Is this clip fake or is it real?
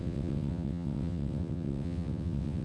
fake